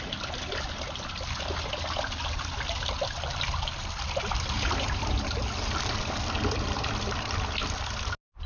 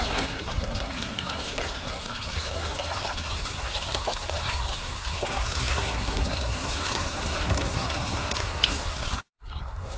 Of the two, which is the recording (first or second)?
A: first